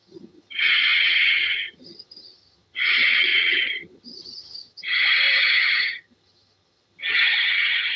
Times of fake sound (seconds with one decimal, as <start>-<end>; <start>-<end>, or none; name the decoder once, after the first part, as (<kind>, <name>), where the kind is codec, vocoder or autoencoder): 0.0-8.0 (vocoder, HiFi-GAN)